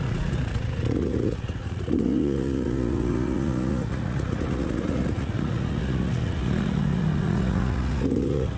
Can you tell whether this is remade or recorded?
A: remade